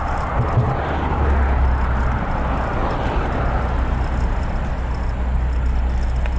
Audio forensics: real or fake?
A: real